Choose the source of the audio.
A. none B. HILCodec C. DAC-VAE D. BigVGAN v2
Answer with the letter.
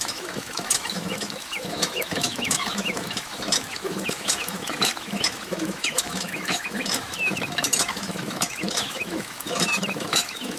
C